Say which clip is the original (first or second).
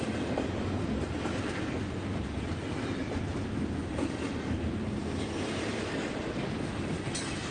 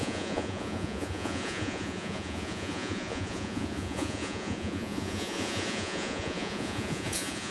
first